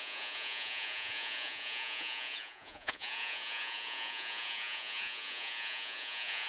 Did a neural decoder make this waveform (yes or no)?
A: yes